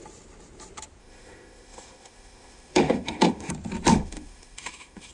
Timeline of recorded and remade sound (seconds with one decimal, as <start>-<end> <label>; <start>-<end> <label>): 0.0-1.0 recorded; 1.0-3.5 remade; 3.5-3.9 recorded; 3.9-5.1 remade